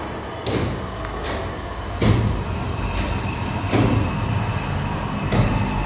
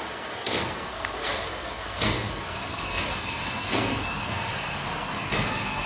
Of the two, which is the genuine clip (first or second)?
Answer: first